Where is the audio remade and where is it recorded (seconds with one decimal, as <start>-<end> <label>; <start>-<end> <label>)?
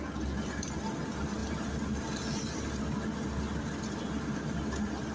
0.0-5.1 recorded